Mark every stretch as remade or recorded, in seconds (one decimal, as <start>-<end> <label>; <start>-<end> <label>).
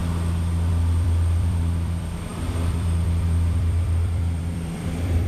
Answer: 0.0-0.7 recorded; 0.7-5.3 remade